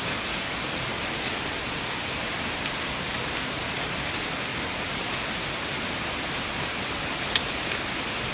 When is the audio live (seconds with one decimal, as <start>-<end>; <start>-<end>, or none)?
0.0-8.3